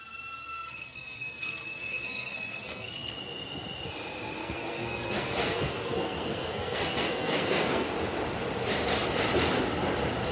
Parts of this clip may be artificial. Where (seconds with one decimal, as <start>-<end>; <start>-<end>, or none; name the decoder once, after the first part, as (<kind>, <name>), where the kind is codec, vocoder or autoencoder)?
0.4-3.2 (codec, SNAC); 4.4-7.9

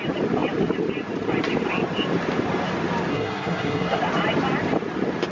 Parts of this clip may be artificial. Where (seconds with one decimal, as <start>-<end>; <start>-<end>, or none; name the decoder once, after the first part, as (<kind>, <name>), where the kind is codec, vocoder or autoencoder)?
3.1-4.0 (codec, SNAC)

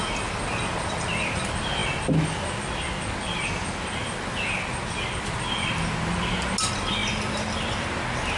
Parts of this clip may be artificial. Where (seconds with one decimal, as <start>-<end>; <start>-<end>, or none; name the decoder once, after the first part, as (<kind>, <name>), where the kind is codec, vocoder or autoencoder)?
none

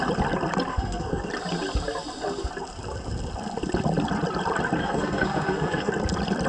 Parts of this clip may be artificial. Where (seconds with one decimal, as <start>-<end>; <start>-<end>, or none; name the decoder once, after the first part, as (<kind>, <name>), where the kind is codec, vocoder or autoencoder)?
0.7-1.3 (codec, SNAC); 4.8-5.9